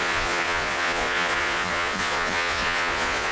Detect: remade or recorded remade